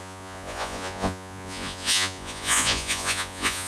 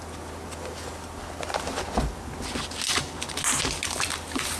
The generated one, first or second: first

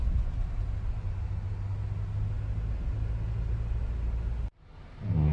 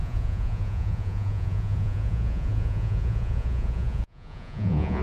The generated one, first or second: second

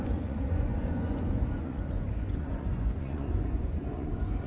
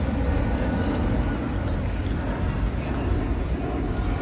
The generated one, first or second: first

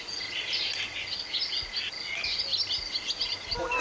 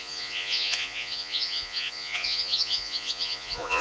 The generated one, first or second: second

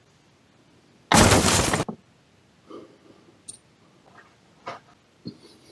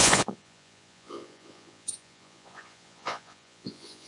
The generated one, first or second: second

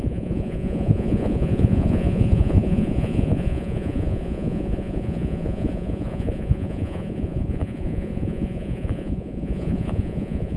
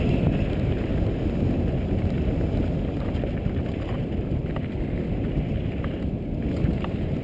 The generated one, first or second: first